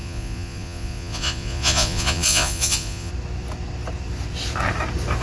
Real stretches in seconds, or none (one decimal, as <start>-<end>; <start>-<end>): 3.1-5.2